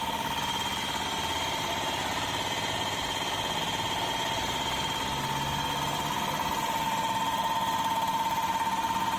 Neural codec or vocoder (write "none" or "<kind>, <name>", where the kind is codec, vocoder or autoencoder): none